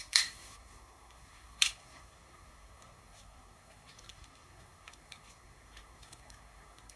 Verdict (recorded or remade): remade